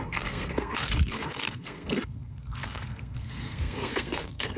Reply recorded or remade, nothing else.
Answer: remade